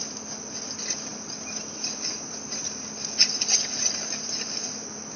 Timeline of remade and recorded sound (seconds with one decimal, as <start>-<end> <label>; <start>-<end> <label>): 0.0-5.2 recorded